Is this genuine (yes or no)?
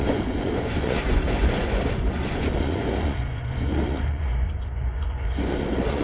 no